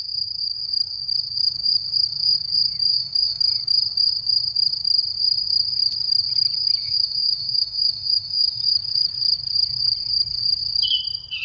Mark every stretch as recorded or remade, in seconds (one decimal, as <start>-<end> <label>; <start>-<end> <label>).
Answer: 0.0-2.9 recorded; 2.9-3.4 remade; 3.4-6.8 recorded; 6.8-8.6 remade; 8.6-11.4 recorded